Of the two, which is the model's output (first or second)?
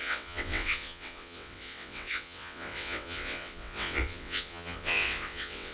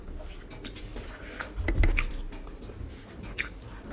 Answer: first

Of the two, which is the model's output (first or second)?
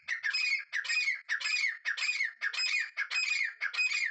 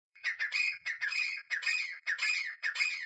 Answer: second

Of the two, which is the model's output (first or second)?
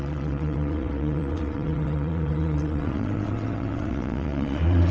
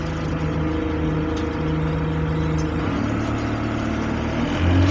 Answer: first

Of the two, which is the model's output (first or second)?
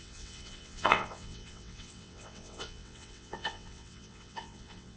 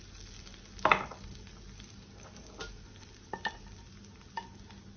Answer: first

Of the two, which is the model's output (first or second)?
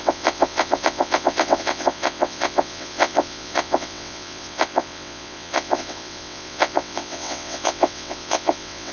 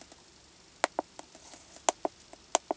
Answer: first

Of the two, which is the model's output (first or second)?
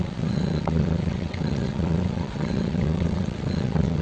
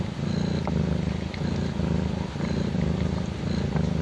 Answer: first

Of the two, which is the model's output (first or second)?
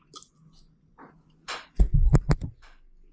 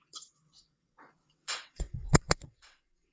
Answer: second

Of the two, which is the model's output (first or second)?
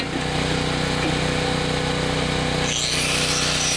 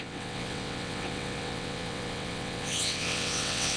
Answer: second